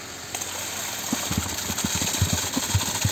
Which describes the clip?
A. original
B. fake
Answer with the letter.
A